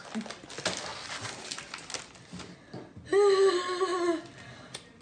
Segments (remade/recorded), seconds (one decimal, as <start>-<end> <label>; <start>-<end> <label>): 0.0-5.0 recorded